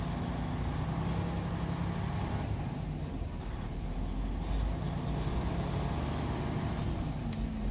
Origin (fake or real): real